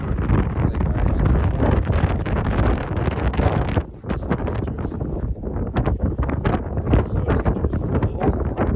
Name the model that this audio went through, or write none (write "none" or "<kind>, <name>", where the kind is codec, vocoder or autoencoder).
none